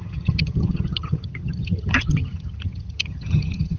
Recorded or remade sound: remade